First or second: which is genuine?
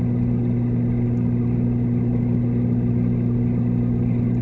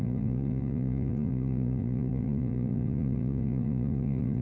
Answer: first